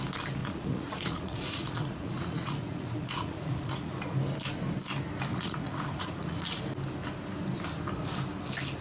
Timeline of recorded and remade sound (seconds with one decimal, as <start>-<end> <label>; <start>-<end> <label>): 0.0-0.4 recorded; 0.4-3.9 remade; 3.9-5.3 recorded; 5.3-6.6 remade; 6.6-8.8 recorded